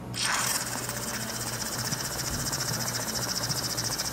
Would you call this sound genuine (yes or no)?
no